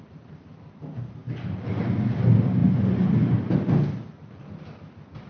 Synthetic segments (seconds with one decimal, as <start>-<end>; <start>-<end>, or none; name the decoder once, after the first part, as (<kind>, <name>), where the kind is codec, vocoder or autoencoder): none